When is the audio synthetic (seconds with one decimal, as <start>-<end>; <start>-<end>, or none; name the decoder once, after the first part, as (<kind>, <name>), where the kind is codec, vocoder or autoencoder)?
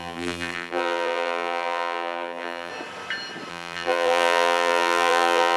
0.0-2.7 (vocoder, BigVGAN v2); 3.5-5.6